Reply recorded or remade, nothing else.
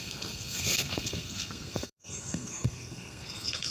remade